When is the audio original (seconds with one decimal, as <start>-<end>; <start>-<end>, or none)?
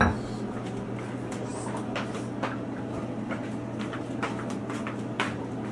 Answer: 0.0-5.7